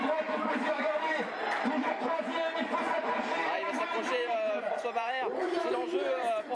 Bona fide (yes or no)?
no